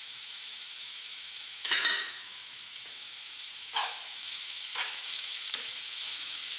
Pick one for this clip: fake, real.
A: fake